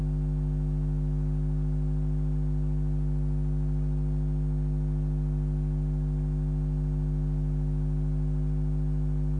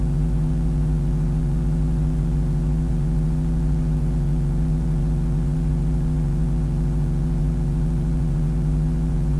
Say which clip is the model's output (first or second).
second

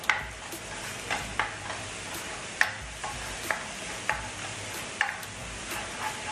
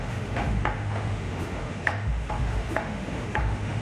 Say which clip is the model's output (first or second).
second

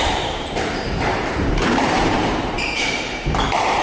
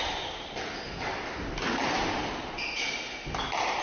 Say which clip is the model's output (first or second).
first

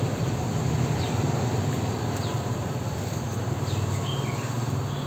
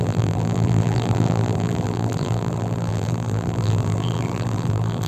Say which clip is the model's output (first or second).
second